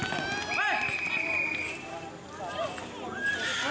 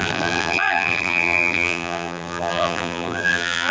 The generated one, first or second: second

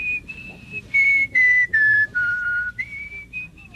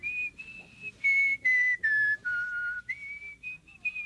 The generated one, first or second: first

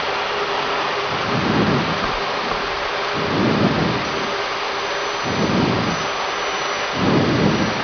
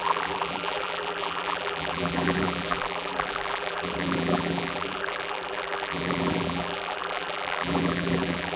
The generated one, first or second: second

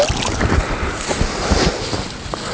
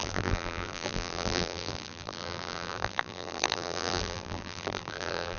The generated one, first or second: second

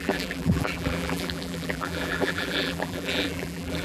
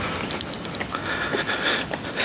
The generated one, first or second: first